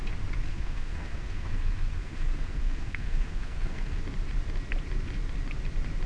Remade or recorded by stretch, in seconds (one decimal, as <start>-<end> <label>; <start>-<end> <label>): 0.0-0.5 recorded; 0.5-4.0 remade; 4.0-6.1 recorded